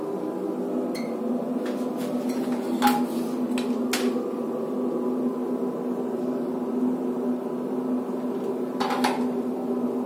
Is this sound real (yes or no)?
yes